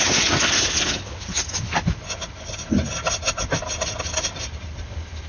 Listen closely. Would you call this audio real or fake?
real